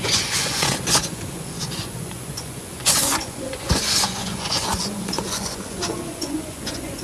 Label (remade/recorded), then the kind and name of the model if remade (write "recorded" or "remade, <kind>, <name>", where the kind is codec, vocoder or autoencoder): remade, vocoder, Vocos